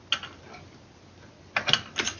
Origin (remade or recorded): recorded